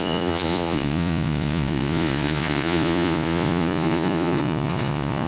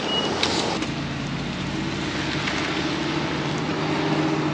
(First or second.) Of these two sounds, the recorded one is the second